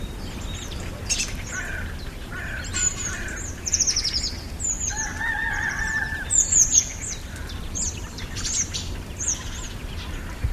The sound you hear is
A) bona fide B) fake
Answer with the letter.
B